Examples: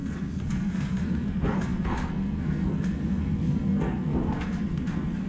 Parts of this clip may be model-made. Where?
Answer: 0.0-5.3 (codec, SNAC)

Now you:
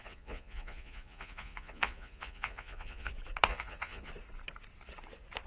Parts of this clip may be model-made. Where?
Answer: 0.0-3.1 (vocoder, Vocos); 3.5-4.1

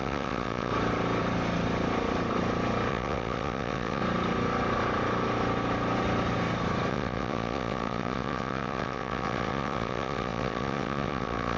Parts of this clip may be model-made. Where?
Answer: 0.0-0.7 (vocoder, WaveNeXt); 2.9-4.0; 6.9-11.6

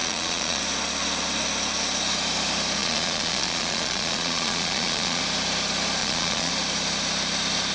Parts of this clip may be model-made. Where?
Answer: 0.0-0.6 (vocoder, Vocos); 2.8-5.2; 6.0-6.5

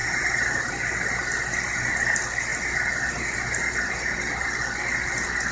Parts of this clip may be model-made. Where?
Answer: 0.0-0.7 (vocoder, BigVGAN v2)

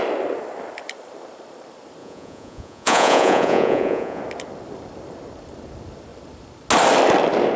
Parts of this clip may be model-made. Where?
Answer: 2.0-4.2 (vocoder, Vocos)

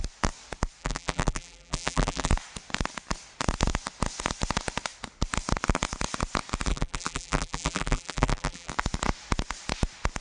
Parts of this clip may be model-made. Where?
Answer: 0.8-2.3 (vocoder, BigVGAN v2); 6.7-8.7